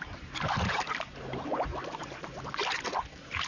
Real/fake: real